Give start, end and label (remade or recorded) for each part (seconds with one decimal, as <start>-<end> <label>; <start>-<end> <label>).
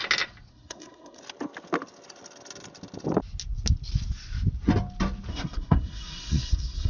0.0-0.5 recorded; 0.5-1.2 remade; 1.2-5.3 recorded; 5.3-6.9 remade